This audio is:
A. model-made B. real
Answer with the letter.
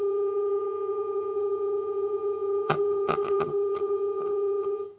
A